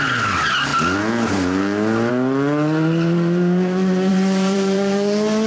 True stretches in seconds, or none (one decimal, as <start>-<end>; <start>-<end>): 0.0-4.1